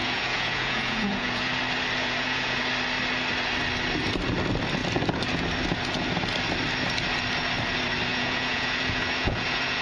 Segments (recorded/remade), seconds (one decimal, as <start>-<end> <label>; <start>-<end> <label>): 0.0-1.4 remade; 1.4-2.0 recorded; 2.0-2.6 remade; 2.6-8.1 recorded; 8.1-9.8 remade